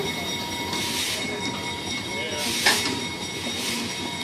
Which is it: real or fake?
real